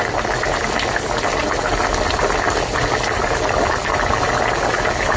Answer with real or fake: real